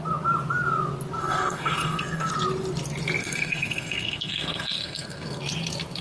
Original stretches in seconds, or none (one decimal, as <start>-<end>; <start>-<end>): 0.0-1.2; 2.3-3.2; 5.4-6.0